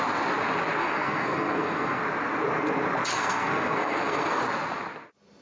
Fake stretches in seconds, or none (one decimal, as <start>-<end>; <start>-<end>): 0.8-2.0; 3.1-4.4